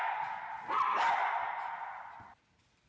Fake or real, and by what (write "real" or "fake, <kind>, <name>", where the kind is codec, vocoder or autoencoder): real